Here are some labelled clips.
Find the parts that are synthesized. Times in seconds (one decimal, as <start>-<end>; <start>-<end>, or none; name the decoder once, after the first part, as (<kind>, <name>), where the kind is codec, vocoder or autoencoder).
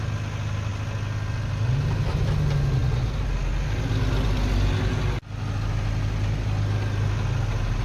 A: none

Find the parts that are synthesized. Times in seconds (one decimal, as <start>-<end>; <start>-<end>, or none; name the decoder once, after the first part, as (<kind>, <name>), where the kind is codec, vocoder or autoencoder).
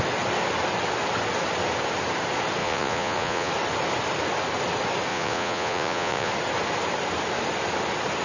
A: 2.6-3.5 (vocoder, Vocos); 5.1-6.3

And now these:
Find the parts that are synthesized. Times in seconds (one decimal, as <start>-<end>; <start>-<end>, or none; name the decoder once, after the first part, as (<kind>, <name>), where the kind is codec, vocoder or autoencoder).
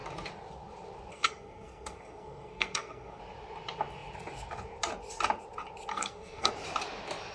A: 1.1-3.2 (codec, SNAC); 5.9-6.5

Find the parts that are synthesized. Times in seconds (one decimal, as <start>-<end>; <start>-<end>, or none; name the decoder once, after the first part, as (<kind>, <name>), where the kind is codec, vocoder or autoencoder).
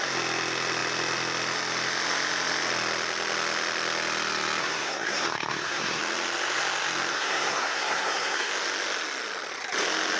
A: 4.6-6.0 (codec, SNAC); 7.1-8.5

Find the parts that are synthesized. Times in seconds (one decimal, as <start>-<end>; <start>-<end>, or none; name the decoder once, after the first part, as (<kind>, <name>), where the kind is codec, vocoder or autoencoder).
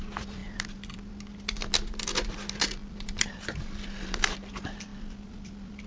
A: 0.4-1.1 (vocoder, BigVGAN v2); 2.8-4.2; 4.9-5.9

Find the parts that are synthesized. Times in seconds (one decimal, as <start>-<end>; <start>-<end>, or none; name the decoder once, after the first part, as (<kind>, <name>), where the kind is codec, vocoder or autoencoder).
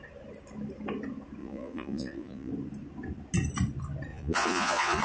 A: 1.4-2.5 (vocoder, Vocos); 4.1-5.0